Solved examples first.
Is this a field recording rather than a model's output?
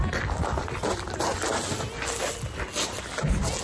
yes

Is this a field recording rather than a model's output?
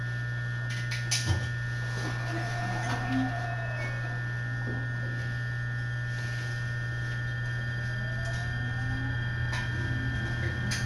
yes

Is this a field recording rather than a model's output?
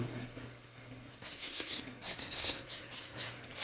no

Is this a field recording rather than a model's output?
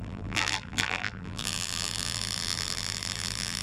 no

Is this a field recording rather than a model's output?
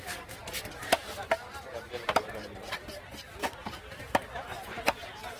yes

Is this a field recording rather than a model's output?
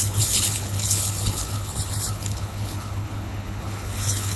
no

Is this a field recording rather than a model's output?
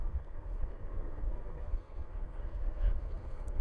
no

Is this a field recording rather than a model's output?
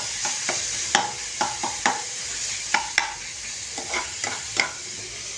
yes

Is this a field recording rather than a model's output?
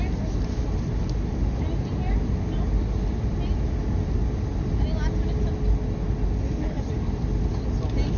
yes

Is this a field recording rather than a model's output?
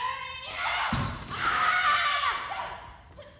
yes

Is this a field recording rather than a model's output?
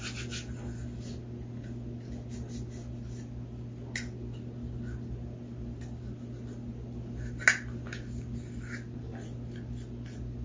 yes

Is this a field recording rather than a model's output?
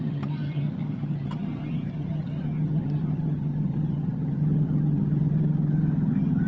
no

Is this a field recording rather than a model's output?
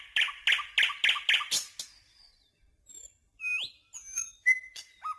yes